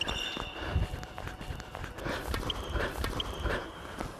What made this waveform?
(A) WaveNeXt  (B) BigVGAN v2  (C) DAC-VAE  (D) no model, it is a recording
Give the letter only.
D